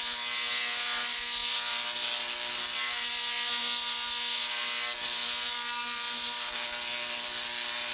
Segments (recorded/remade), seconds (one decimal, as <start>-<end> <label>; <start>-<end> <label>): 0.0-7.9 recorded